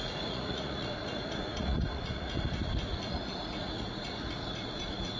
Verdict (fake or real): fake